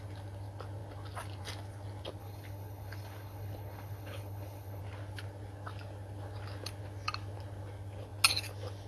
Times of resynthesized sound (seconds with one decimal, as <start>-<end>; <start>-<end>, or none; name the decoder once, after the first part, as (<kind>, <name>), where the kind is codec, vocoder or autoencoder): 2.2-4.8 (codec, HILCodec)